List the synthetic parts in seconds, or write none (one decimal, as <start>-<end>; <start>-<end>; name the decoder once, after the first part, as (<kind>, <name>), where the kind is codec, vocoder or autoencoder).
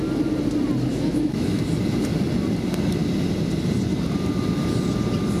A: 0.9-1.6 (autoencoder, DAC-VAE)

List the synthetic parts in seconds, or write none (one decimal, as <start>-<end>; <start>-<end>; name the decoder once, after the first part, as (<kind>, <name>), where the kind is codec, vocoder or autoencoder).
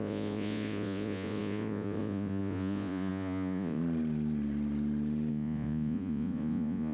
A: 0.0-3.8 (vocoder, Vocos); 5.3-6.9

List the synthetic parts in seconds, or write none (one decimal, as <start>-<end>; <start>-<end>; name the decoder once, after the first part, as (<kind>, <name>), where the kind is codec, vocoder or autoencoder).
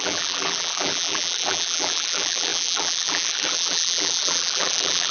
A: 0.0-5.1 (vocoder, BigVGAN v2)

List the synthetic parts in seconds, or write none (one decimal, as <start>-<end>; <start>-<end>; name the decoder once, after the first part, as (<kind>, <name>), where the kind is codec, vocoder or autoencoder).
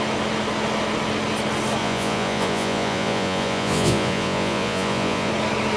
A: 1.8-5.3 (vocoder, Vocos)